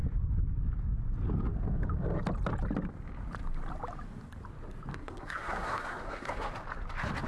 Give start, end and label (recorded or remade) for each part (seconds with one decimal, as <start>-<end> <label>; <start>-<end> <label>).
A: 0.0-4.9 recorded; 4.9-6.5 remade; 6.5-7.3 recorded

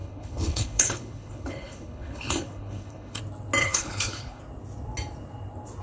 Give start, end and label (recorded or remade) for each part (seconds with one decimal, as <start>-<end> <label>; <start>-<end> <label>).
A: 0.0-3.2 remade; 3.2-3.6 recorded; 3.6-4.4 remade; 4.4-5.8 recorded